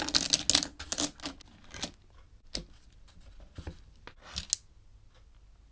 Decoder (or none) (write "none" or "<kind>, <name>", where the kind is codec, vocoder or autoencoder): none